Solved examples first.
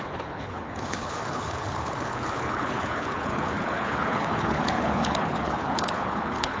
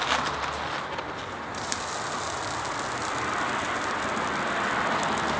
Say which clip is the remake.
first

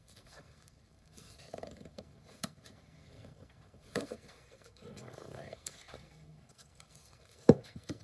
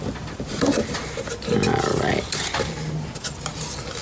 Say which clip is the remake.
first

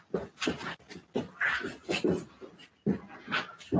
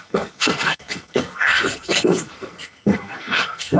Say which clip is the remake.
second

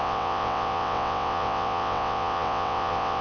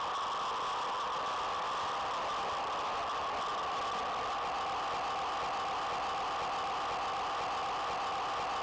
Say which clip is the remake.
first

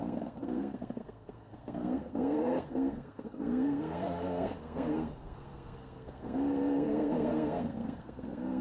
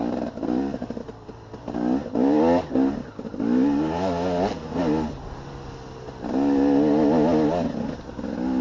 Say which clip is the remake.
first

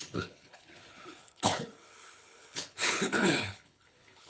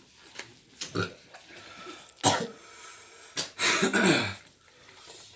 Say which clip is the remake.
first